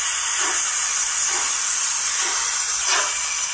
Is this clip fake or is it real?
real